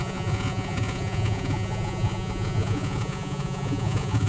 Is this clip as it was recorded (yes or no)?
no